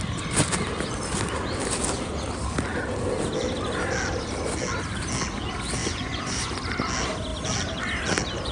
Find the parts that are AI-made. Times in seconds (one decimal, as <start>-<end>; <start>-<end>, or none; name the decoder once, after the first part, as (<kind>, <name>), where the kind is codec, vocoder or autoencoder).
5.8-6.5 (vocoder, Vocos)